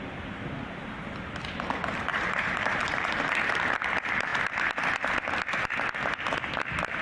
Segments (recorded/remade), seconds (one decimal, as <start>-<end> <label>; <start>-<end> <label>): 0.0-2.1 recorded; 2.1-3.3 remade; 3.3-7.0 recorded